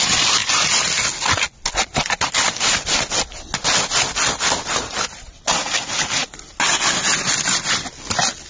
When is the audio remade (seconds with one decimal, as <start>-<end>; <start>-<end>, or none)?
none

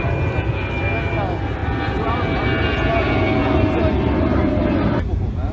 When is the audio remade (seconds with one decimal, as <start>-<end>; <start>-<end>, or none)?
none

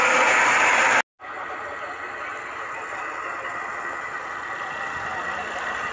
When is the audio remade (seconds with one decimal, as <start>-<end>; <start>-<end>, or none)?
none

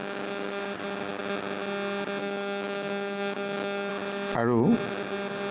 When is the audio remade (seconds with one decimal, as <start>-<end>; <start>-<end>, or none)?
0.0-0.6; 2.2-3.9

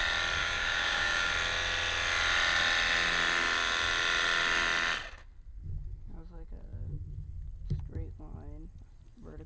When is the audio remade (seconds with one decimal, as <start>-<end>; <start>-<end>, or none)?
0.4-1.3

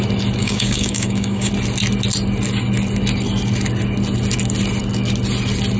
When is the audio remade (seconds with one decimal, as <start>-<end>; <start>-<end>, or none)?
0.4-1.5

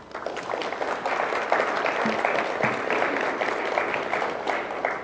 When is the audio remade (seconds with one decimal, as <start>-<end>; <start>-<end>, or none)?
none

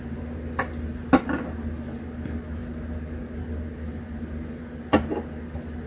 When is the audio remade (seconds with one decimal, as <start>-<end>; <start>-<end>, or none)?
none